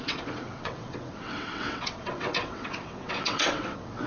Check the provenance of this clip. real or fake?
fake